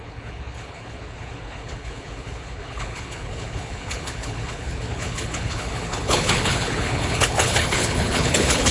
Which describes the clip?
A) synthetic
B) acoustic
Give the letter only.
A